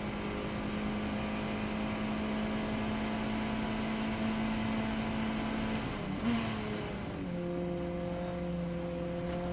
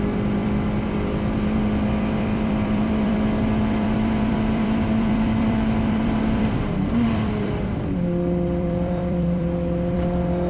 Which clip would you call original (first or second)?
first